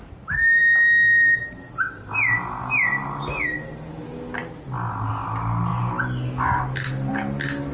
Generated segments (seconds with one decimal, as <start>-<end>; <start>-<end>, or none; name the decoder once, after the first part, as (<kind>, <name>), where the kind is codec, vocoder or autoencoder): none